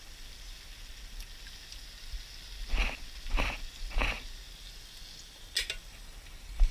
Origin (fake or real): real